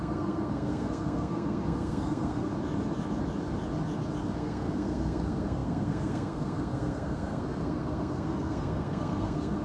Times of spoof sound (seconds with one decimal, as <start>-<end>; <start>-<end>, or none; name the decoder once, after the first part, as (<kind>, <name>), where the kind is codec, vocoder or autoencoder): 0.0-2.5 (codec, SNAC); 4.2-9.6